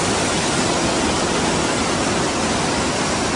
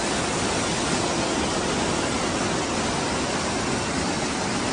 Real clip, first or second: second